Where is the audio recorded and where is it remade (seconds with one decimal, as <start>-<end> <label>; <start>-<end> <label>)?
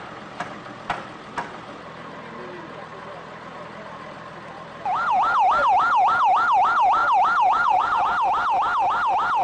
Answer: 0.0-9.4 recorded